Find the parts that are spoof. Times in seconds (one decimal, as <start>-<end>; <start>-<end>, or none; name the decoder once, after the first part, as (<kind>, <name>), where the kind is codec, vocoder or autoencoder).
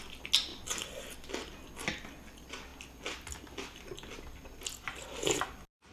none